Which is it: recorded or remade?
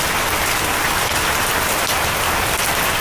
recorded